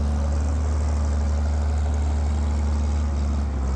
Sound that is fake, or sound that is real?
real